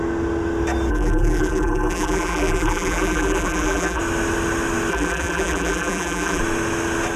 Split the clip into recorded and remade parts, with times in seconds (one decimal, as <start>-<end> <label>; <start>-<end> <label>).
0.0-0.9 recorded; 0.9-4.0 remade; 4.0-4.9 recorded; 4.9-6.4 remade; 6.4-7.2 recorded

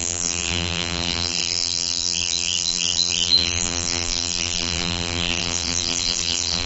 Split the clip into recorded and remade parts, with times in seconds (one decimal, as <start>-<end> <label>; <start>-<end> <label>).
0.0-6.7 remade